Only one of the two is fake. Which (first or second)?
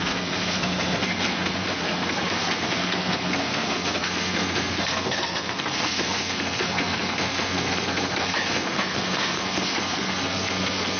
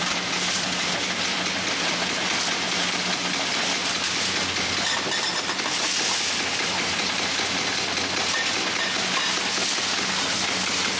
first